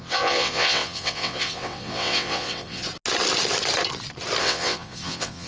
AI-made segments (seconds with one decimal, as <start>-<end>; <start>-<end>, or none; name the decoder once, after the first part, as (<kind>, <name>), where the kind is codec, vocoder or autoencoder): 0.0-2.8 (vocoder, WaveNeXt); 4.4-5.5